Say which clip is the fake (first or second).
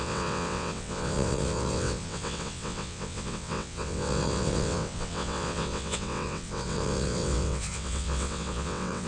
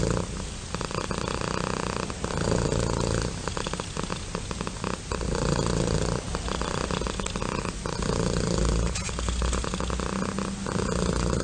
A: first